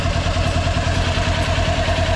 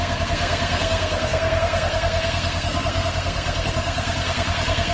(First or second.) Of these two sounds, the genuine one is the first